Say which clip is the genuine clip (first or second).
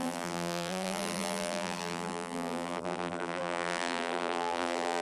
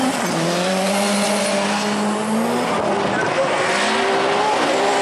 second